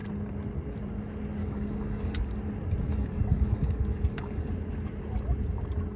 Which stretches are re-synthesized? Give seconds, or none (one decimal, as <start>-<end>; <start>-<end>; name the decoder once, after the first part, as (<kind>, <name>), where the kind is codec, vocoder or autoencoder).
1.4-2.2 (codec, DAC); 2.9-4.5